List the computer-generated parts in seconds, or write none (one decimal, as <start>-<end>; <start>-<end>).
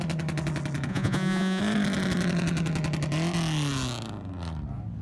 0.9-1.6